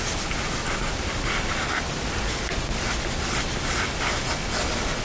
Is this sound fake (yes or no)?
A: no